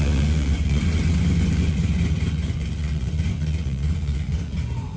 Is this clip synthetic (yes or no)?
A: yes